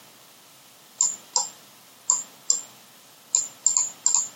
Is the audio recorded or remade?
recorded